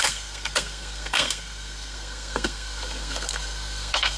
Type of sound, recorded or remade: remade